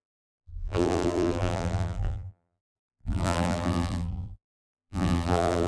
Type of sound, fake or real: fake